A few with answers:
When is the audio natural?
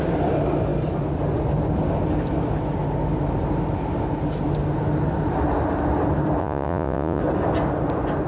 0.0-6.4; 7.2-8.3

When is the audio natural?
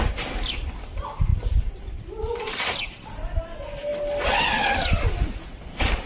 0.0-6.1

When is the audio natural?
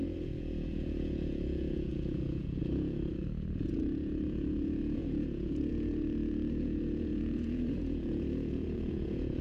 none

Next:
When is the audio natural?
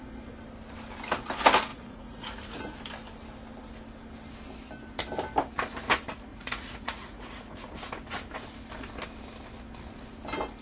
0.0-1.7; 2.6-6.3; 7.7-10.6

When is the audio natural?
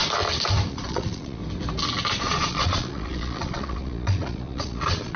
0.0-0.7; 1.4-2.1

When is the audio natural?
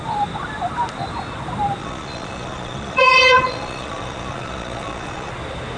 0.0-1.8; 5.3-5.8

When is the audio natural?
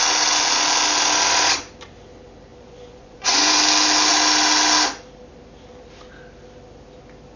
0.0-2.5; 3.6-7.4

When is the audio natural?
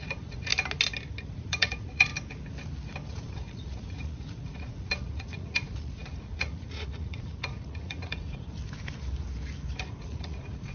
0.5-1.3; 2.1-3.1; 8.6-10.0